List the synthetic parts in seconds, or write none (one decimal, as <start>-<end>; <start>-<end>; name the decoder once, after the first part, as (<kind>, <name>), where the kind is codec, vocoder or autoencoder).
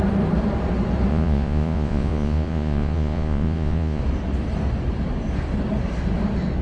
1.1-4.0 (vocoder, Vocos)